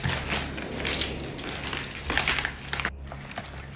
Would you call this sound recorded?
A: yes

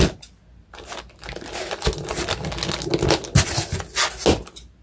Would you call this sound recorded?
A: yes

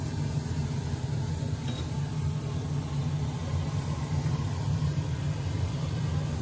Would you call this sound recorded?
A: yes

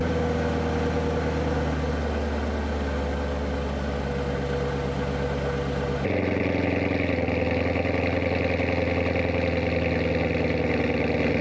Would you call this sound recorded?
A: yes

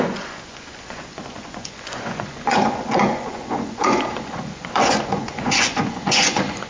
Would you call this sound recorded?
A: no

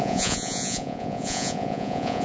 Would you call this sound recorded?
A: no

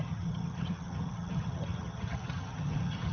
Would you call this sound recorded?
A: no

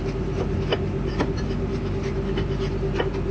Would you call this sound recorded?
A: yes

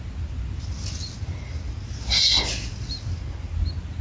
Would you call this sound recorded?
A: yes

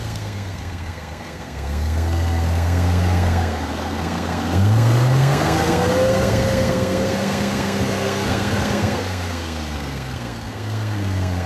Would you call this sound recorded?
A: no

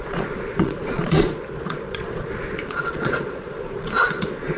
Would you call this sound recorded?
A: no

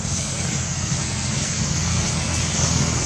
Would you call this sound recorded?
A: no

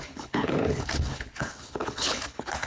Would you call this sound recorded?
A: no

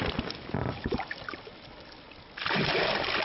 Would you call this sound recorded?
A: yes